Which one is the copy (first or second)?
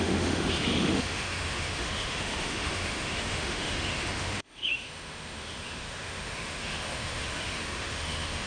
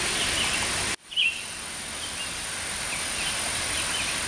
first